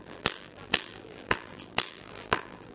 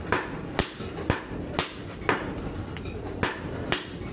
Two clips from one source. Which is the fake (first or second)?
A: first